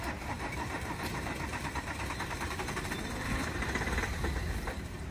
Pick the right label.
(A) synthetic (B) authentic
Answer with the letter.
A